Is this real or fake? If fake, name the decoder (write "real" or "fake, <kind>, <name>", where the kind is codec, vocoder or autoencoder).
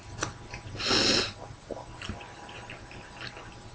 real